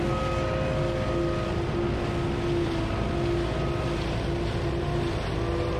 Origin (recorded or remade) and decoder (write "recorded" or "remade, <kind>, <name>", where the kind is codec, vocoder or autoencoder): recorded